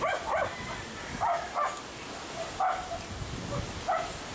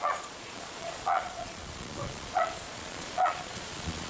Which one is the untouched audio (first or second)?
first